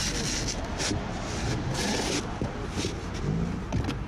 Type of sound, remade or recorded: recorded